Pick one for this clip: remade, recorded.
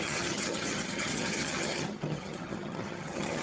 remade